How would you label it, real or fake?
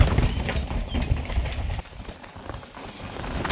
real